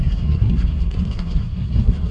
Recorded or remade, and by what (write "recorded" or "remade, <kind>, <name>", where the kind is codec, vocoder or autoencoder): remade, codec, SNAC